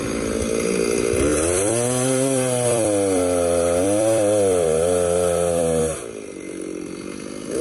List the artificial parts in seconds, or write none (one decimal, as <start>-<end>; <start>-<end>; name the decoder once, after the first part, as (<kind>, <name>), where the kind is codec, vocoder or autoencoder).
1.3-5.8 (vocoder, BigVGAN v2)